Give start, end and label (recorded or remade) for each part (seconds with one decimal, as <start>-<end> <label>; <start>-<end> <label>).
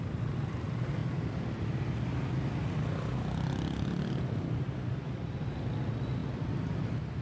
0.0-7.2 recorded